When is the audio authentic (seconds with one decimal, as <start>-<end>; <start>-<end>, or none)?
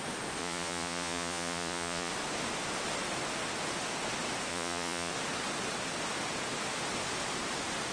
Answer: 0.0-0.4; 2.1-4.5; 5.1-7.9